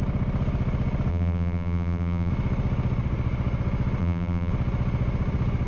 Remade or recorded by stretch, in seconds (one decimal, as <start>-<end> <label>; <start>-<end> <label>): 0.0-1.1 recorded; 1.1-2.3 remade; 2.3-4.0 recorded; 4.0-4.5 remade; 4.5-5.7 recorded